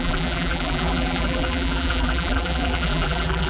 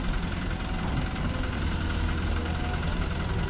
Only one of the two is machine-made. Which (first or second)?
first